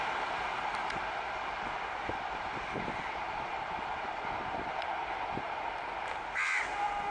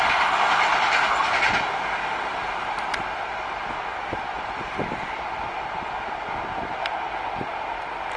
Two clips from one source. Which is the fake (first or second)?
first